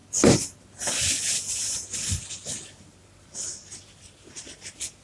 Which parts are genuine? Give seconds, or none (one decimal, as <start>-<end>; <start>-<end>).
0.0-5.0